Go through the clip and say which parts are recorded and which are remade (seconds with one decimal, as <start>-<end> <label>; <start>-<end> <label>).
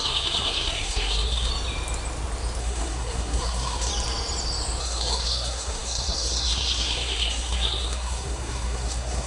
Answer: 0.0-1.5 remade; 1.5-2.6 recorded; 2.6-3.9 remade; 3.9-4.8 recorded; 4.8-9.3 remade